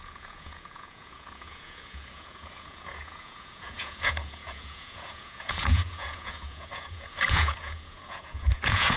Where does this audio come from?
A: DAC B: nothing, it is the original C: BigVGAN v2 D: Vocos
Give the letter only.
D